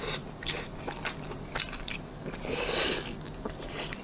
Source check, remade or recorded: recorded